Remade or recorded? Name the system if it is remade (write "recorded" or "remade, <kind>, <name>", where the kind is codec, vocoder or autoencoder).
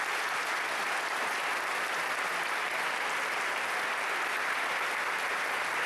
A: recorded